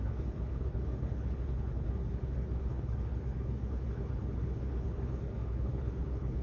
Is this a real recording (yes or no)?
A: no